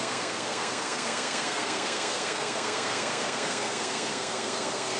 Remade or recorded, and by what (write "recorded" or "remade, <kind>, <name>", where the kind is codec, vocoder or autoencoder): remade, codec, SNAC